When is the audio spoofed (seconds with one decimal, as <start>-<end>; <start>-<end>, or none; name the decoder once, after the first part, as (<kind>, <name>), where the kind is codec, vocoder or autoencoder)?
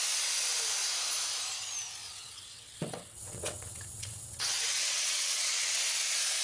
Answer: 2.0-5.8 (vocoder, WaveNeXt)